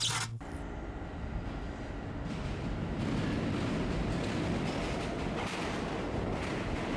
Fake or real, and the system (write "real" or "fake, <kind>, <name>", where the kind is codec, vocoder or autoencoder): real